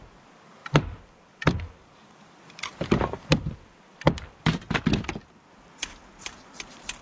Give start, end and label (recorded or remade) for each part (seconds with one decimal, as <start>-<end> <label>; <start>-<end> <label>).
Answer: 0.0-0.6 recorded; 0.6-4.6 remade; 4.6-7.0 recorded